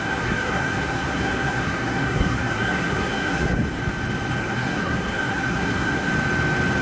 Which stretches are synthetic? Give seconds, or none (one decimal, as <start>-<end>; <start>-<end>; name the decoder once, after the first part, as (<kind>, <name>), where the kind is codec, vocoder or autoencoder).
0.0-3.8 (codec, SNAC); 4.4-6.1